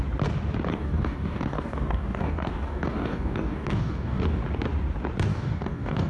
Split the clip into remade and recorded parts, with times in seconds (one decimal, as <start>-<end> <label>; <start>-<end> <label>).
0.0-0.7 recorded; 0.7-4.4 remade; 4.4-5.3 recorded; 5.3-6.1 remade